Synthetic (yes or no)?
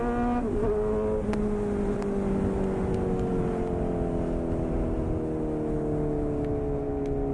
no